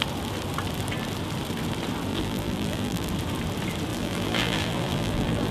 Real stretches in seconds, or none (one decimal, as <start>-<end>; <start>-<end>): 0.0-2.1; 3.1-3.9